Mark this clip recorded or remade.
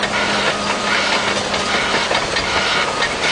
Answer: recorded